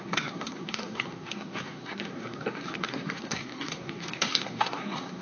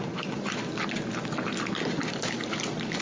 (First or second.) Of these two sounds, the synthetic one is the first